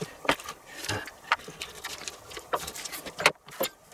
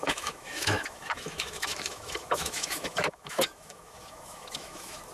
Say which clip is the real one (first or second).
first